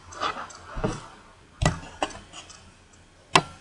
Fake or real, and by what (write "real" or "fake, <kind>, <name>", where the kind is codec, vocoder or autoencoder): real